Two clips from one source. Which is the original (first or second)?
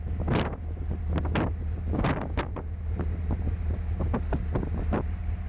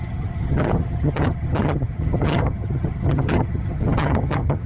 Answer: first